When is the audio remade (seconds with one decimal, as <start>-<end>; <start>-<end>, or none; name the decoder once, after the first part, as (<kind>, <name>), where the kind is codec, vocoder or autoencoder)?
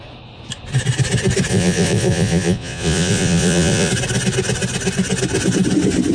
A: 1.5-3.9 (vocoder, Vocos)